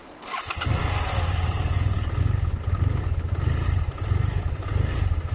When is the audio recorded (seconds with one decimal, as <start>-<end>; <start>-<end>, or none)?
0.0-5.3